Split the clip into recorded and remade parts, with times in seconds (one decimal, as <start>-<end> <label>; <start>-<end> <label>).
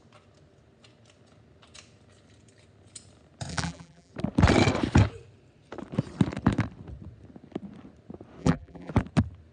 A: 0.0-3.5 recorded; 3.5-4.1 remade; 4.1-8.4 recorded; 8.4-8.9 remade; 8.9-9.5 recorded